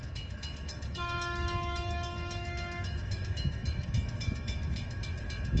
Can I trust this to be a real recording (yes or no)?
no